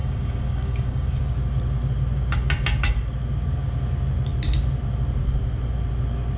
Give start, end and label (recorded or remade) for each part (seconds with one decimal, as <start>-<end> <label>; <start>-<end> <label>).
0.0-1.2 remade; 1.2-6.4 recorded